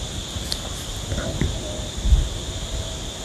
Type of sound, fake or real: fake